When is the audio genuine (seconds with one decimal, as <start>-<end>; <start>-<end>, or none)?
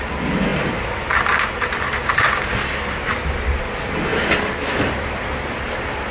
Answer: 0.0-6.1